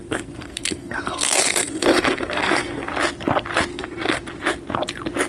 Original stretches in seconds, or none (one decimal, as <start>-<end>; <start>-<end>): 2.9-3.7; 4.2-5.3